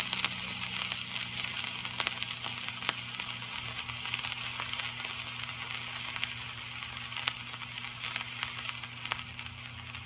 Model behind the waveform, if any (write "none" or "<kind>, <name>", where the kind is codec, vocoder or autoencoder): none